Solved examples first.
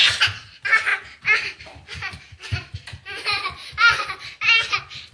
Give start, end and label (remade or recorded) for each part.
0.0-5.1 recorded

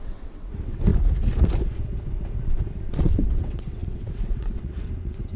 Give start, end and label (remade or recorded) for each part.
0.0-0.9 remade; 0.9-3.0 recorded; 3.0-5.4 remade

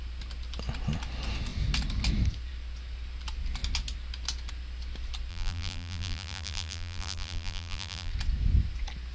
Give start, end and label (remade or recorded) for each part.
0.0-5.3 recorded; 5.3-8.1 remade; 8.1-9.1 recorded

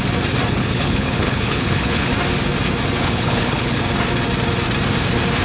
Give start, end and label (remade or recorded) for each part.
0.0-0.6 recorded; 0.6-2.1 remade; 2.1-3.0 recorded; 3.0-3.8 remade; 3.8-5.4 recorded

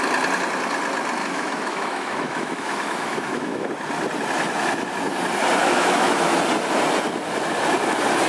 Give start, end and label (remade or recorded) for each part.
0.0-1.2 recorded; 1.2-3.7 remade; 3.7-5.6 recorded; 5.6-6.4 remade; 6.4-8.3 recorded

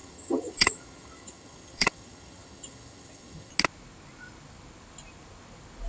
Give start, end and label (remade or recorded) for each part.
0.0-3.5 remade; 3.5-5.9 recorded